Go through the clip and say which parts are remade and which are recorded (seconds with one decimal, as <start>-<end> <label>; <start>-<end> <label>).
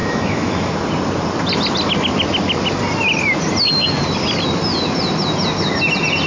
0.0-0.7 remade; 0.7-6.3 recorded